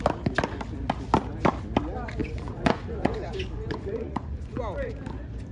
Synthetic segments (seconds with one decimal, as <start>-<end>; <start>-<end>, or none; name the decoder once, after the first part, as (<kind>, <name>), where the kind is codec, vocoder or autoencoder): 2.2-4.6 (vocoder, Vocos)